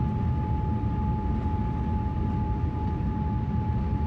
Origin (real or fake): real